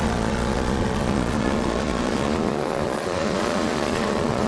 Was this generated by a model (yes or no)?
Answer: yes